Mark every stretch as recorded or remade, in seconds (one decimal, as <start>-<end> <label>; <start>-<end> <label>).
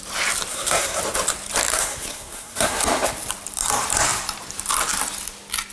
0.0-0.5 recorded; 0.5-1.0 remade; 1.0-1.7 recorded; 1.7-2.8 remade; 2.8-5.7 recorded